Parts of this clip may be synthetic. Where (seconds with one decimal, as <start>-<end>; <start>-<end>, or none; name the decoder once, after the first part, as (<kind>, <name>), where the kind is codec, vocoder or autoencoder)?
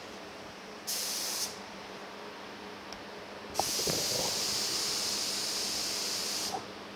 0.0-2.0 (vocoder, BigVGAN v2); 6.2-7.0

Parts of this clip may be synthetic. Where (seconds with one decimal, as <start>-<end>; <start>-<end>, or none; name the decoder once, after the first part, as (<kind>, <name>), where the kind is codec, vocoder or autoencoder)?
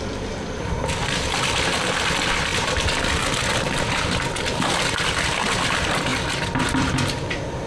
0.0-6.1 (vocoder, BigVGAN v2); 7.3-7.7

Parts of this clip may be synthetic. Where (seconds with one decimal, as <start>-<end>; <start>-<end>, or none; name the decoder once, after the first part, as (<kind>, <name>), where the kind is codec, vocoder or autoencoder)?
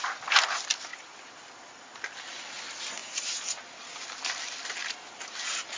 0.9-1.5 (vocoder, BigVGAN v2); 3.0-5.8